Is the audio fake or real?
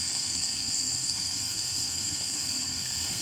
fake